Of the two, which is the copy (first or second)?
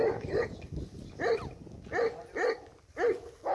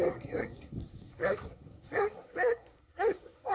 second